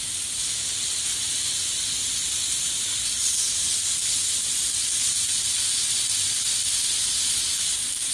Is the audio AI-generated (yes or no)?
no